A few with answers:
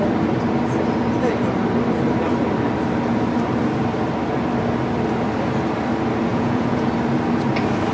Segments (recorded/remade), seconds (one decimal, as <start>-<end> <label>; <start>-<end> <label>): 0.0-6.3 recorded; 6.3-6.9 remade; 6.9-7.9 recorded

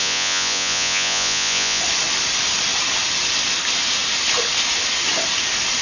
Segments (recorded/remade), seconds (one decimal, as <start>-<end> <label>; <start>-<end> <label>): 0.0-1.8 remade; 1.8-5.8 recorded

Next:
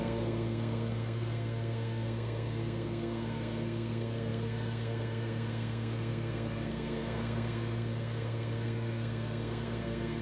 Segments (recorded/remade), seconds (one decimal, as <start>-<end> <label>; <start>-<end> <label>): 0.0-10.2 remade

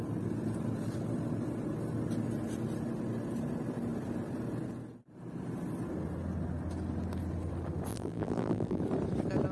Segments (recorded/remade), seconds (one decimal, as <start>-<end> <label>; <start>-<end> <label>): 0.0-7.9 recorded; 7.9-8.8 remade; 8.8-9.5 recorded